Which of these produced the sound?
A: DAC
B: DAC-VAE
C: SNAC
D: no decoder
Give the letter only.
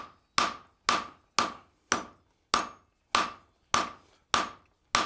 D